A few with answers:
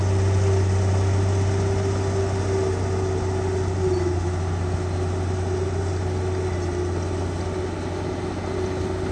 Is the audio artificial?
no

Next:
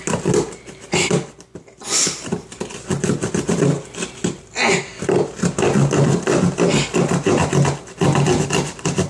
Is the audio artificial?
no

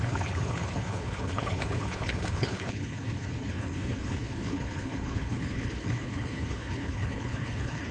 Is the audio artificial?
yes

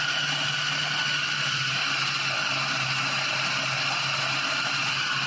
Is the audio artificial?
no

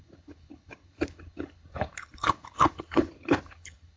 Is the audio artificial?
yes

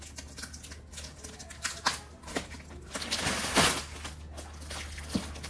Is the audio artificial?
no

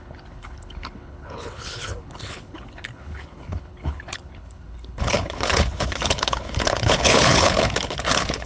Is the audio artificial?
yes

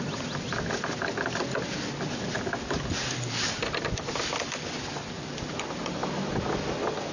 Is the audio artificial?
no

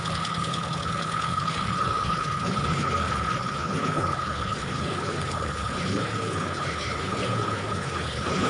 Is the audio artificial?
yes